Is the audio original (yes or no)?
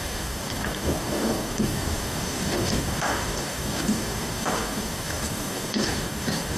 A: no